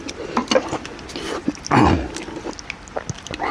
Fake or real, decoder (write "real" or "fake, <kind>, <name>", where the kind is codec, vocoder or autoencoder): real